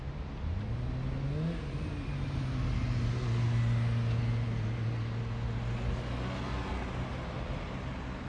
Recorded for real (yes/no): yes